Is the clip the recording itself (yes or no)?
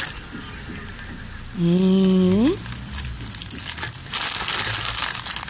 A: yes